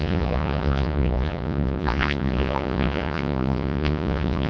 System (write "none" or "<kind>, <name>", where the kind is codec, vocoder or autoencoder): vocoder, Vocos